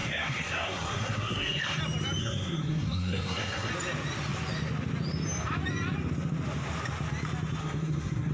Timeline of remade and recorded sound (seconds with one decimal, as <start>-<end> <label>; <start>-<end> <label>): 0.0-1.8 remade; 1.8-2.2 recorded; 2.2-3.7 remade; 3.7-7.6 recorded; 7.6-8.3 remade